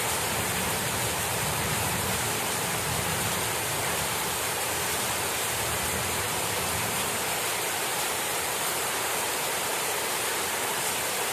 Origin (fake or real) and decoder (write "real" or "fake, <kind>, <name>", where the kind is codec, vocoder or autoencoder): fake, vocoder, BigVGAN v2